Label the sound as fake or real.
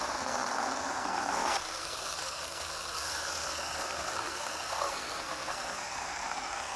fake